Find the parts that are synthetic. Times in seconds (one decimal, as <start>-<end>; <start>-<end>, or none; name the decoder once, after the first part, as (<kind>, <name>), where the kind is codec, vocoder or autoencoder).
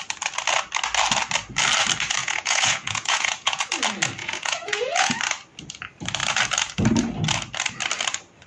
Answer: 2.2-3.6 (vocoder, Vocos); 4.2-5.2